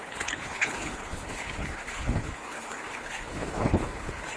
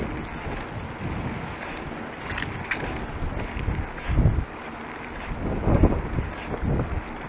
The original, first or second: second